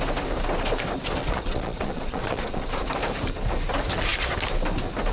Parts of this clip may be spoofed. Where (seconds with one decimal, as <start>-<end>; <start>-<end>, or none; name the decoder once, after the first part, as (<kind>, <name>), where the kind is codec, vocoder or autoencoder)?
1.2-2.9 (vocoder, Vocos)

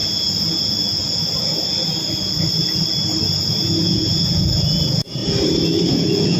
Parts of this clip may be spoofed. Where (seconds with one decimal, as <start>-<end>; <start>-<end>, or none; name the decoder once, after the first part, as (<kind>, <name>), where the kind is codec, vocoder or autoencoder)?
3.8-5.2 (vocoder, Vocos); 5.9-6.4

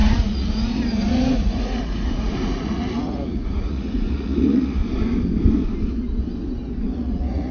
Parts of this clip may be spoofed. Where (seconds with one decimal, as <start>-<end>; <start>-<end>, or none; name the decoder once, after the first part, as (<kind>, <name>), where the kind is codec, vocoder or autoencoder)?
0.0-4.8 (vocoder, Vocos); 6.9-7.5